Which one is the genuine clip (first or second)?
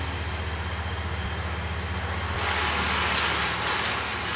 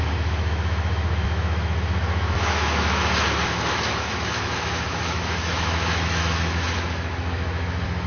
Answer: first